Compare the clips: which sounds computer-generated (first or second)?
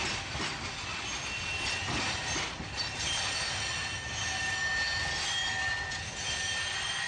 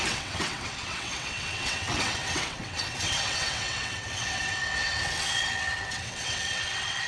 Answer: second